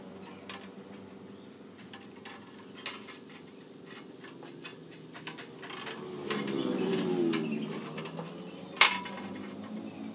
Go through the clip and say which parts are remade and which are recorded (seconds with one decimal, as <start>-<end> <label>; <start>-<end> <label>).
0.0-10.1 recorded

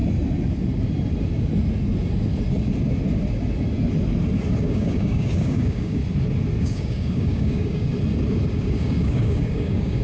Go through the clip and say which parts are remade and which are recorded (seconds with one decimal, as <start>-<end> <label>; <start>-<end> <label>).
0.0-4.6 recorded; 4.6-6.0 remade; 6.0-6.6 recorded; 6.6-7.9 remade; 7.9-8.6 recorded; 8.6-10.0 remade

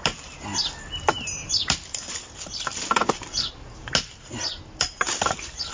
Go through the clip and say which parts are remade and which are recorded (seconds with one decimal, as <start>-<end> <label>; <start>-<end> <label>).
0.0-0.5 recorded; 0.5-2.4 remade; 2.4-5.7 recorded